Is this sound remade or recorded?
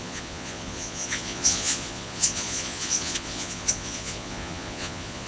remade